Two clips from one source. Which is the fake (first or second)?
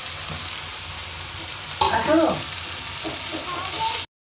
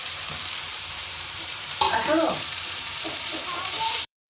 second